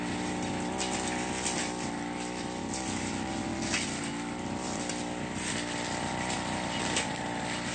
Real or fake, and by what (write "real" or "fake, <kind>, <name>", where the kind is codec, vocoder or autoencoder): real